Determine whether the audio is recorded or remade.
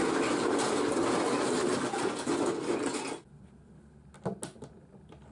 recorded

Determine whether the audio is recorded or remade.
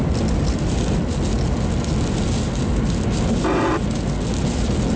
recorded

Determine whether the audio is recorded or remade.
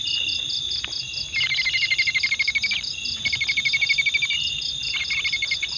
recorded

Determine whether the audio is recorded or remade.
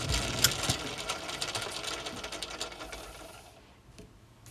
recorded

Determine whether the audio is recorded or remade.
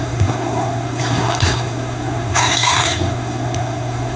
remade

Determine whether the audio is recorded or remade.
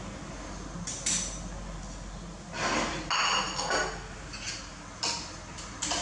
recorded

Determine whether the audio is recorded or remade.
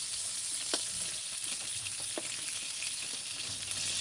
recorded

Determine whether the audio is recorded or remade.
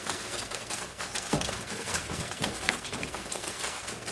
remade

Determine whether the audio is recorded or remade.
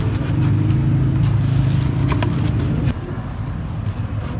recorded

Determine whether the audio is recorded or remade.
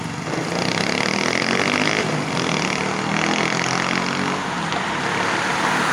recorded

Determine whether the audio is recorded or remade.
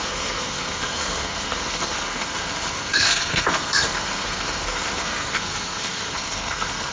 remade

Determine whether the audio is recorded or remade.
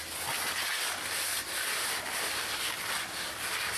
recorded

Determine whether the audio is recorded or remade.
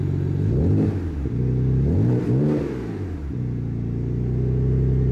recorded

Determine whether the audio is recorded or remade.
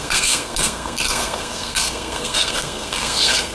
remade